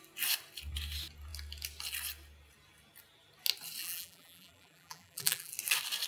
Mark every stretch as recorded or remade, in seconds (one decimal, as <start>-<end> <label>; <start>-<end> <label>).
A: 0.0-3.8 recorded; 3.8-5.5 remade; 5.5-6.1 recorded